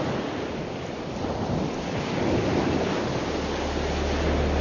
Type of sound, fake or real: real